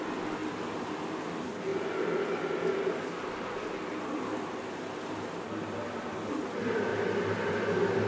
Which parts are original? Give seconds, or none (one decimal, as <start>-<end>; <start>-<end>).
0.0-8.1